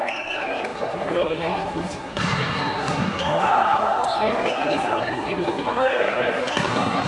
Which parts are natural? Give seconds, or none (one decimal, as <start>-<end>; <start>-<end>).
none